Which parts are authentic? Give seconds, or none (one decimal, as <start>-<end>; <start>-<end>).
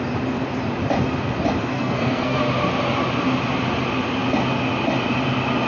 0.0-1.7; 2.4-5.7